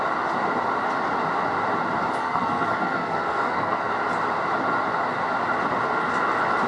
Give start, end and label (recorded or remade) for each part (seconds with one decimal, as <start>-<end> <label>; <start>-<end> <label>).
0.0-2.2 recorded; 2.2-3.9 remade; 3.9-6.7 recorded